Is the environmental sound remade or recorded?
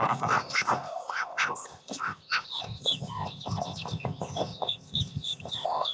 remade